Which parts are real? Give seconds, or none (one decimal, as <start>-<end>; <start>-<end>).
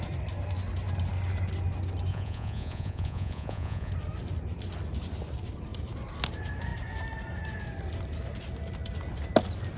0.0-2.1; 3.9-9.8